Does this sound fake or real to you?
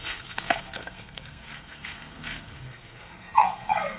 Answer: fake